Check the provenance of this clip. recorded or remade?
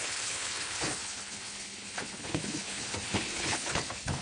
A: remade